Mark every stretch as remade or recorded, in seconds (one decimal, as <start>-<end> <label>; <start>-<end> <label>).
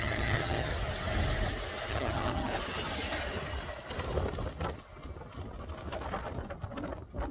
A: 0.0-0.7 remade; 0.7-1.9 recorded; 1.9-2.5 remade; 2.5-7.3 recorded